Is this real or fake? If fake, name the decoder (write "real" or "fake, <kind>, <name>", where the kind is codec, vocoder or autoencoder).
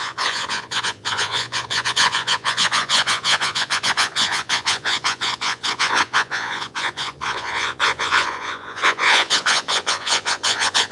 fake, vocoder, Vocos